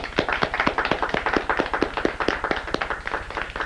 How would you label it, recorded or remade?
recorded